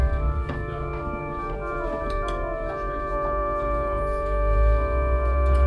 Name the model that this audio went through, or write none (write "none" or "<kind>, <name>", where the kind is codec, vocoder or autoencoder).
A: vocoder, BigVGAN v2